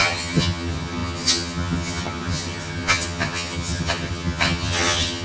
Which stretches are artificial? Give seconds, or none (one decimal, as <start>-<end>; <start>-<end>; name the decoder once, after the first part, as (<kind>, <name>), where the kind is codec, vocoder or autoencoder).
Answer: 0.0-5.2 (vocoder, HiFi-GAN)